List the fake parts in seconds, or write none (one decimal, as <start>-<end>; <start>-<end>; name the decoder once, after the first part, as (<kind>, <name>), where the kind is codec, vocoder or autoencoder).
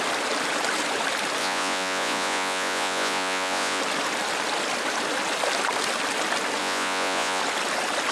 1.4-3.8 (vocoder, Vocos); 6.6-7.4